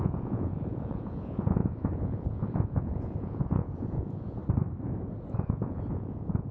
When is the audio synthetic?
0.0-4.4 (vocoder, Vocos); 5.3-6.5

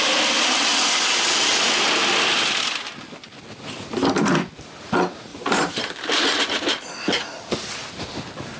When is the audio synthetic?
5.3-6.2 (vocoder, BigVGAN v2)

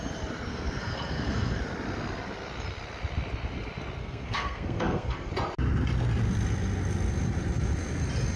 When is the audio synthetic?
0.5-1.6 (codec, SNAC); 4.0-5.3

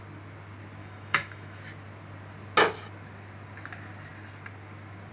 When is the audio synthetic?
0.8-1.6 (autoencoder, DAC-VAE)

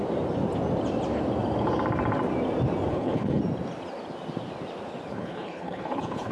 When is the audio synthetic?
2.9-3.4 (codec, HILCodec); 5.1-6.3

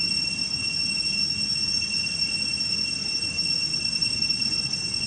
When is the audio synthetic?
3.7-5.1 (vocoder, WaveNeXt)